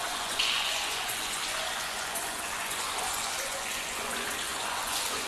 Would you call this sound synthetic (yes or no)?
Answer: yes